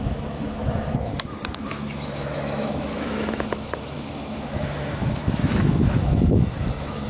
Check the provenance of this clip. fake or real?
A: fake